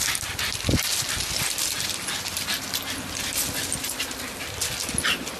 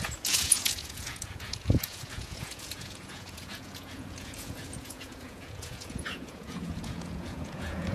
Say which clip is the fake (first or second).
second